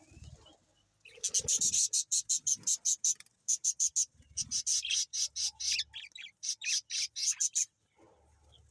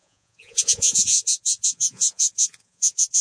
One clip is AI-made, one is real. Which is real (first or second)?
first